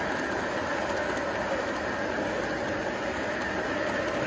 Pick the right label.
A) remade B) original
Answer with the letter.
B